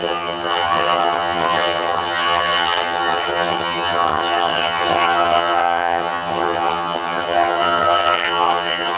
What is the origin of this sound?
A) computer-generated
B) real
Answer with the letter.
A